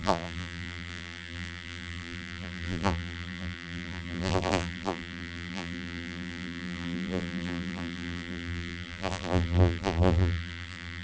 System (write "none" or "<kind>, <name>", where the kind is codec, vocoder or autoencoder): vocoder, BigVGAN v2